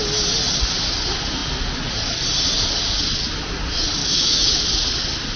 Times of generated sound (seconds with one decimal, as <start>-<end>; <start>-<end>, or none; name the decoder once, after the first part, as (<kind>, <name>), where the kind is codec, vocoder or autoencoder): 4.0-4.6 (autoencoder, DAC-VAE)